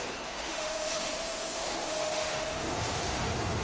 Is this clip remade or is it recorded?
remade